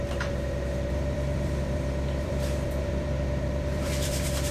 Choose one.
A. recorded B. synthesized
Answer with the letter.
B